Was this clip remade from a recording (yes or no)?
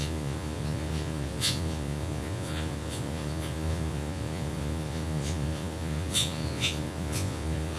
yes